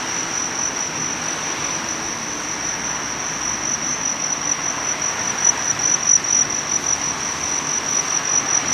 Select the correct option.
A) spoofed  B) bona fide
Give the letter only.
B